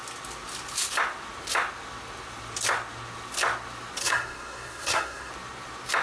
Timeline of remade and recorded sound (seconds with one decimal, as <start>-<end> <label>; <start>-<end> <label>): 0.0-4.0 recorded; 4.0-5.3 remade; 5.3-6.0 recorded